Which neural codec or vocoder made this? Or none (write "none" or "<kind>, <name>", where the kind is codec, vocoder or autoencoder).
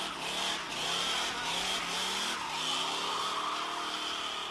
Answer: none